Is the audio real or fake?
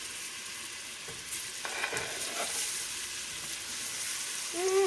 real